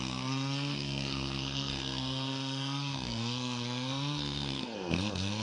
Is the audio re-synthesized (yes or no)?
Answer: yes